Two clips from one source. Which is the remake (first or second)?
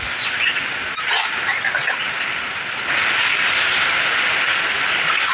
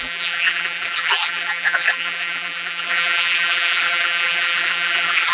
second